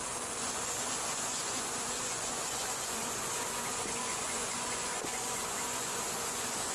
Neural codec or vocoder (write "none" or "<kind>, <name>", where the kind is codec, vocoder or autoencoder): vocoder, Vocos